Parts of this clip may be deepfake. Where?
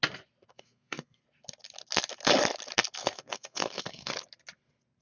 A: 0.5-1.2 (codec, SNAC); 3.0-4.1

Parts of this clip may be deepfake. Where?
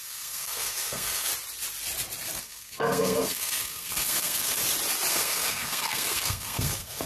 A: 0.0-1.3 (codec, SNAC); 2.4-4.6; 5.1-7.1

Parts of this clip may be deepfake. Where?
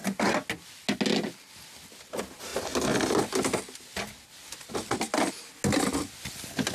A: none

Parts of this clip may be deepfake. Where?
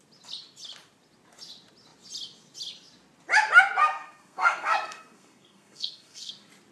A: 3.8-6.3 (codec, SNAC)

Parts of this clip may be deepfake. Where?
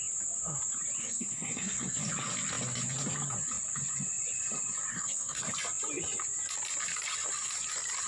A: 1.0-2.0 (codec, SNAC); 4.9-5.4